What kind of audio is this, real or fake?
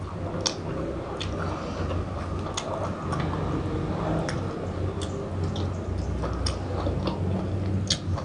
real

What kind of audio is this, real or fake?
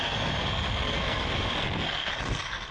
fake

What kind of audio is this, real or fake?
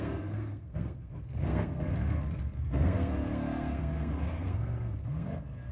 fake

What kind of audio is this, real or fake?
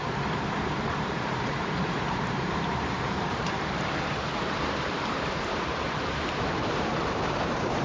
fake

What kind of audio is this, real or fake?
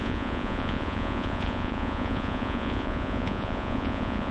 fake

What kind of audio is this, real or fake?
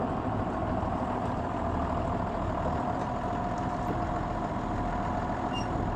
fake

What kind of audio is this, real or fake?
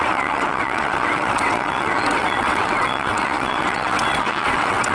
fake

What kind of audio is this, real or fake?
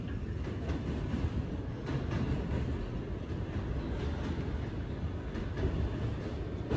real